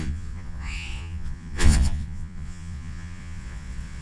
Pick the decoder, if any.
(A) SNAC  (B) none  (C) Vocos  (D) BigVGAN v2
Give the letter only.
C